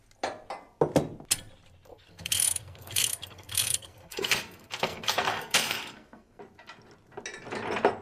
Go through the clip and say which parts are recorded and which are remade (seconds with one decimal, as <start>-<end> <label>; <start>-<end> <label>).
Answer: 0.0-1.9 recorded; 1.9-6.4 remade; 6.4-8.0 recorded